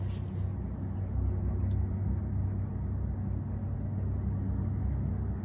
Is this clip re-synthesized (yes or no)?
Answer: no